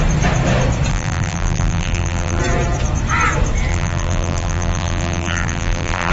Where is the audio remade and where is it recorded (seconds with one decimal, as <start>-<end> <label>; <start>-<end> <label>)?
0.0-0.9 recorded; 0.9-2.4 remade; 2.4-3.7 recorded; 3.7-6.1 remade